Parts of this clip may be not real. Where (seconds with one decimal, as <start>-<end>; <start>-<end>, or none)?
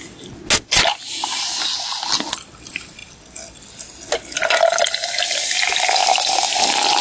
none